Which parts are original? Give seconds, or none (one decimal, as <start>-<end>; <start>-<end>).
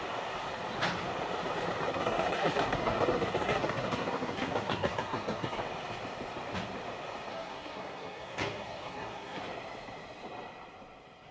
0.0-1.9; 5.6-7.3; 9.4-11.3